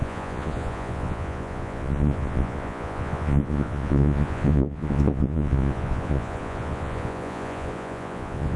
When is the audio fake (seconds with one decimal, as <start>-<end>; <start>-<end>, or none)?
0.0-8.6